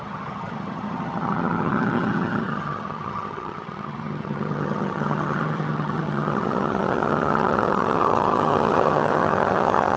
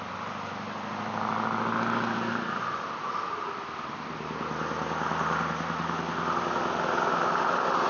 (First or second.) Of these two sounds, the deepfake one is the first